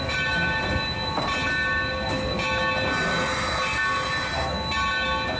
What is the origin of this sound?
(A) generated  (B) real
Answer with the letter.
B